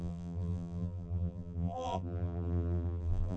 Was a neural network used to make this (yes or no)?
yes